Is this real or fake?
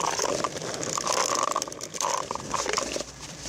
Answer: fake